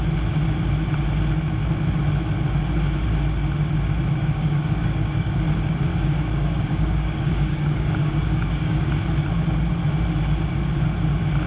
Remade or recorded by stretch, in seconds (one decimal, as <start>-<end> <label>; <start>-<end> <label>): 0.0-4.2 recorded; 4.2-5.4 remade; 5.4-5.9 recorded; 5.9-8.9 remade; 8.9-11.5 recorded